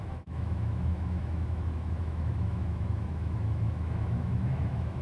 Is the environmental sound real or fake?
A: fake